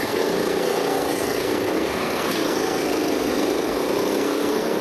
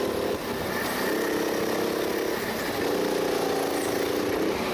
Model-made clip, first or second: first